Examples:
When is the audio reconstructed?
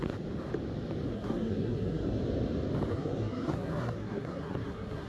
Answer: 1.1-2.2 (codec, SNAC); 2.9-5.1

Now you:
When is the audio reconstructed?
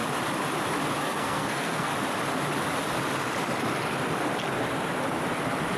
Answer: 1.0-1.9 (codec, SNAC)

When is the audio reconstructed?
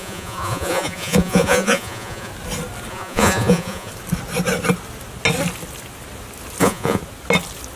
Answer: 0.0-2.3 (vocoder, Vocos); 2.9-3.9; 6.6-7.0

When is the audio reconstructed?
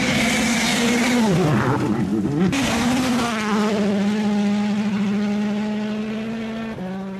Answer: none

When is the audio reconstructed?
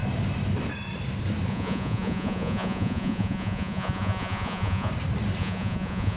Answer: 1.5-4.9 (vocoder, Vocos); 5.4-6.2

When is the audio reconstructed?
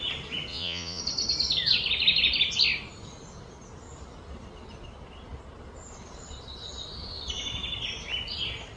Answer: 0.5-1.0 (vocoder, Vocos)